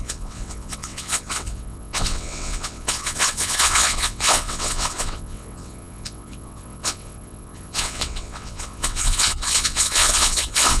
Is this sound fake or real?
fake